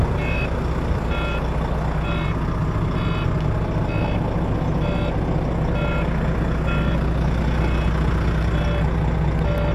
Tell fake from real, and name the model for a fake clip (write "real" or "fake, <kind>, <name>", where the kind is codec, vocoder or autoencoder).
real